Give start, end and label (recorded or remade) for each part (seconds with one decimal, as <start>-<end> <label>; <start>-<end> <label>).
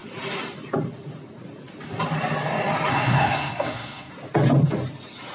0.0-2.9 recorded; 2.9-4.1 remade; 4.1-5.3 recorded